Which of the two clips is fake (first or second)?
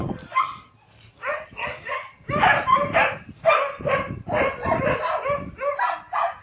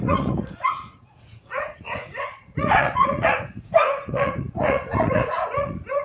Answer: second